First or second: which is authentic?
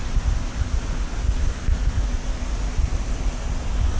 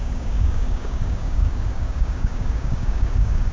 first